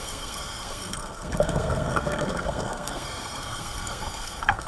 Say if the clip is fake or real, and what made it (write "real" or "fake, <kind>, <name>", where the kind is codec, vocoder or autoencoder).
fake, codec, SNAC